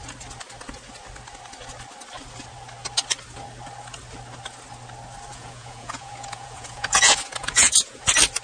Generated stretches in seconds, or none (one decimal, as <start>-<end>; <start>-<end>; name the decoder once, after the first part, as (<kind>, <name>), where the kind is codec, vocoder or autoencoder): 5.3-8.0 (vocoder, Vocos)

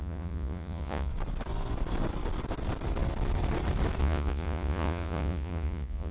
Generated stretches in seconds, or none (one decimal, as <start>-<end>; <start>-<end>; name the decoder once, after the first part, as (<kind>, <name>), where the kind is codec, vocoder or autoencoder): 0.0-1.1 (vocoder, Vocos); 4.0-6.1

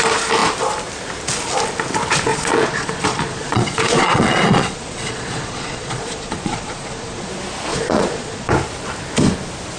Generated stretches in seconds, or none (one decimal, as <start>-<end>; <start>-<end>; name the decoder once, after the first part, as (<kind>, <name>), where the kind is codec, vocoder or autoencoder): 2.3-7.3 (vocoder, Vocos); 7.7-8.5

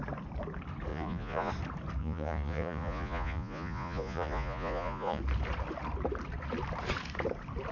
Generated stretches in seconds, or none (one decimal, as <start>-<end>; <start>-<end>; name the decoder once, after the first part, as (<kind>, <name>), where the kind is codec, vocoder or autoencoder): 0.9-1.5 (vocoder, Vocos); 2.0-5.2

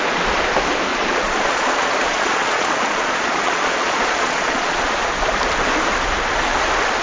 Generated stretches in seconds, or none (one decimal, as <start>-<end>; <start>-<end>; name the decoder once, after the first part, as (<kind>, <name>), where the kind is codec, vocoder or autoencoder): 0.9-5.1 (vocoder, Vocos)